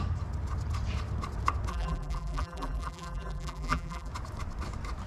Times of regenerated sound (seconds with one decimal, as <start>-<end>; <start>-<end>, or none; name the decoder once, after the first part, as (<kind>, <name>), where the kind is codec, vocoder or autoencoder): 1.7-4.1 (vocoder, BigVGAN v2)